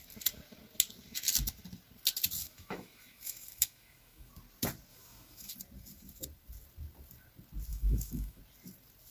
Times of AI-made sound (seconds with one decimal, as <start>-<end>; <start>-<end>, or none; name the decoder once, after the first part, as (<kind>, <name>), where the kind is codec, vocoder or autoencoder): 2.4-4.3 (autoencoder, DAC-VAE); 4.9-5.5; 7.7-8.4